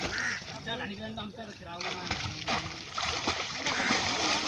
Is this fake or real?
fake